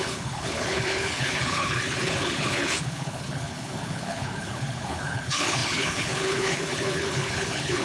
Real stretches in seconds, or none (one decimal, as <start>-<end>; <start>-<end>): none